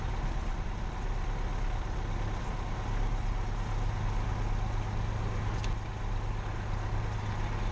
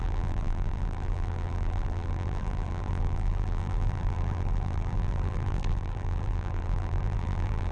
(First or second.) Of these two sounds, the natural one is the first